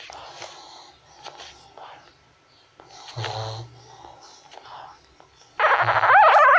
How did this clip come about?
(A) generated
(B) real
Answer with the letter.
B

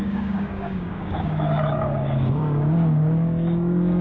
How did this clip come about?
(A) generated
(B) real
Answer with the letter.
A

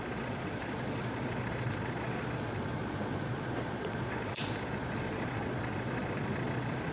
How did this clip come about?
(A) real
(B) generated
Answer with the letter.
B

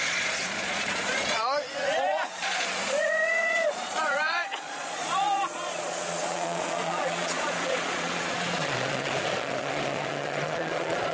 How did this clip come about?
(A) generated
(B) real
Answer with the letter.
A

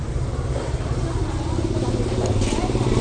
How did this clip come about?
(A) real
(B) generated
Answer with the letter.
A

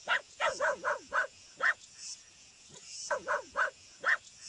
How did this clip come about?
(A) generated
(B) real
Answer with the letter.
A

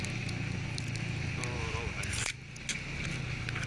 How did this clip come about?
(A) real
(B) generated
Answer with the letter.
A